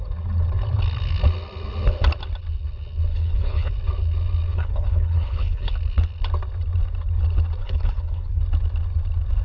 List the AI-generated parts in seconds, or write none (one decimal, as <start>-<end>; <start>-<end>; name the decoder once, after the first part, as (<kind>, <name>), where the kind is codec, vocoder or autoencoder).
3.1-3.7 (codec, HILCodec); 4.5-5.7; 7.6-8.4